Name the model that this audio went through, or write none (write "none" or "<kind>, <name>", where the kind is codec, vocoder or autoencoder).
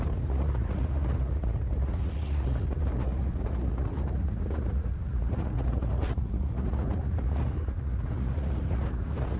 vocoder, Vocos